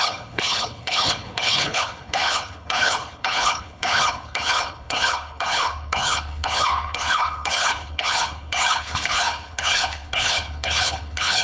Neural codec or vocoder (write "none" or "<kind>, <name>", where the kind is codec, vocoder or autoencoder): codec, HILCodec